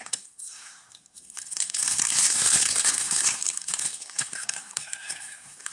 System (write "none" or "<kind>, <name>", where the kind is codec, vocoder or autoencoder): codec, SNAC